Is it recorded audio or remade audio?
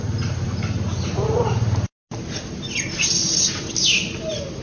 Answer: recorded